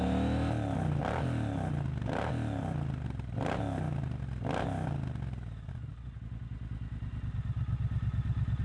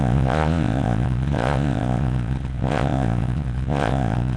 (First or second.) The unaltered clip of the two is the first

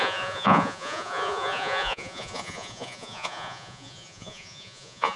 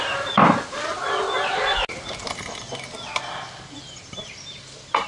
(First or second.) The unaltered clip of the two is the second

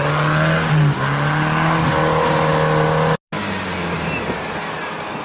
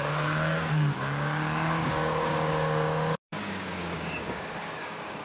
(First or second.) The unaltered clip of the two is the first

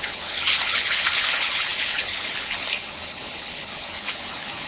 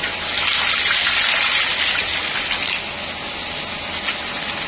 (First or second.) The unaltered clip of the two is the second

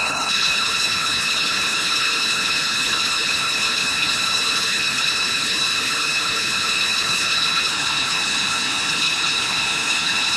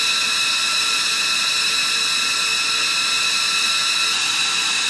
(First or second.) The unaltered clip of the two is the second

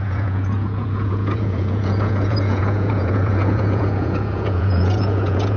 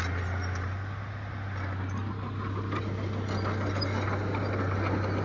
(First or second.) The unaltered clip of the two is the second